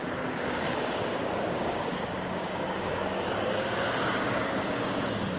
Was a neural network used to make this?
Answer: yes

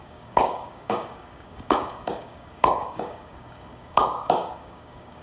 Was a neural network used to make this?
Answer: yes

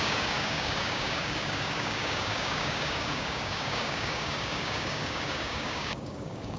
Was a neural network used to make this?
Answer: yes